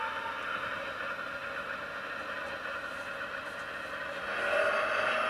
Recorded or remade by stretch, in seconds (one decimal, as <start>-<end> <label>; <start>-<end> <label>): 0.0-5.3 recorded